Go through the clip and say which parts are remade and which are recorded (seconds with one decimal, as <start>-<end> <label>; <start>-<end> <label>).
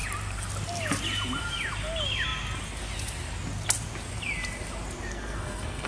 0.0-5.1 recorded; 5.1-5.9 remade